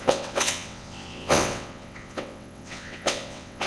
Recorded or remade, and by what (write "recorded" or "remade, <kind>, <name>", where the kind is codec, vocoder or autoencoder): remade, vocoder, WaveNeXt